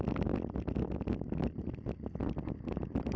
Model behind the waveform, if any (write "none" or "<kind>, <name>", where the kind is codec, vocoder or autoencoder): none